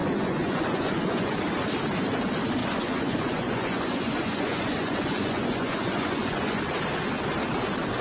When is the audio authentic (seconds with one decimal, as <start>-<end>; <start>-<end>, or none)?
1.4-2.6; 6.6-8.0